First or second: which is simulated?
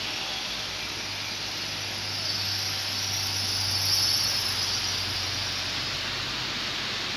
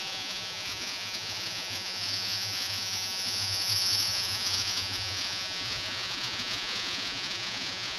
second